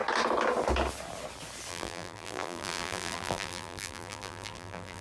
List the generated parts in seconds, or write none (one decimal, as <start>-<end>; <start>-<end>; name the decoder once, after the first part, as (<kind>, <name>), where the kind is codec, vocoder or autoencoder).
1.7-5.0 (vocoder, BigVGAN v2)